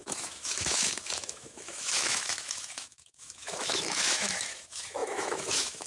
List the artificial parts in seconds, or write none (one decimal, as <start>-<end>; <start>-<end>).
0.0-5.9